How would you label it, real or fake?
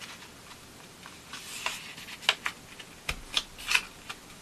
real